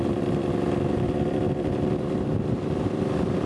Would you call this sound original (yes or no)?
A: yes